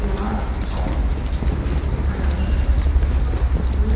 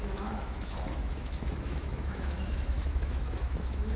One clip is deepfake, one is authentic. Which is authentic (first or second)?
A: first